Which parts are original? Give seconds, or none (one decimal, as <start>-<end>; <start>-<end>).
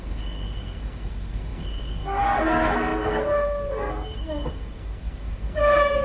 none